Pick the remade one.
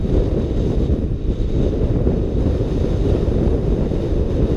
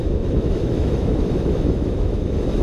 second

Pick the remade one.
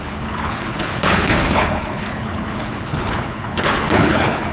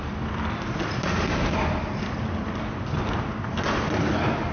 first